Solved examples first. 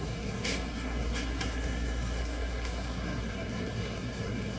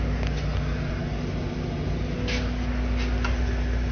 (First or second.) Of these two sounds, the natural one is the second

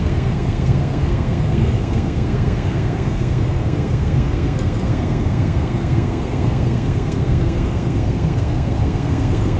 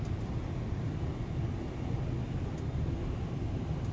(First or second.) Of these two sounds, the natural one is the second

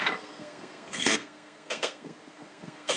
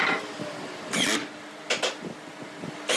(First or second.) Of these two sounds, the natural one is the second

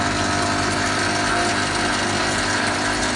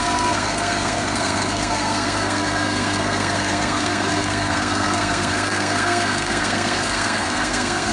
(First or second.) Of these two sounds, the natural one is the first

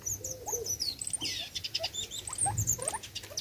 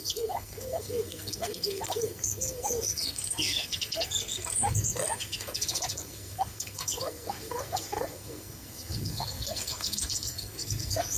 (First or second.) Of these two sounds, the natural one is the first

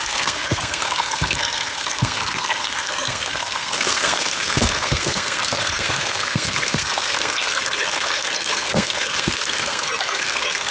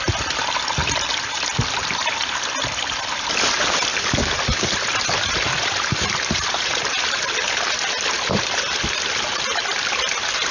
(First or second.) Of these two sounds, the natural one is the second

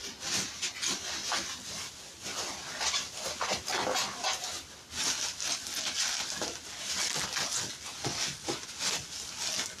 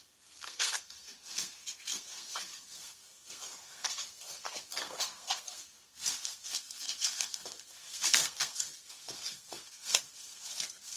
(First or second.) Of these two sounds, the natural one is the first